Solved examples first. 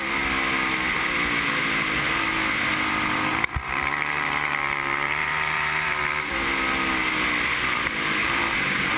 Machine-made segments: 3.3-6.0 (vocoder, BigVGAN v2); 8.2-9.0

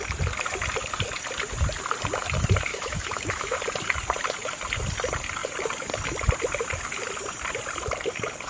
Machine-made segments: 2.7-3.6 (autoencoder, DAC-VAE)

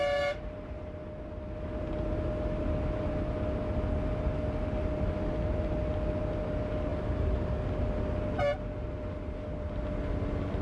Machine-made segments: none